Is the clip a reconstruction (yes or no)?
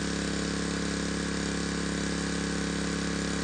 no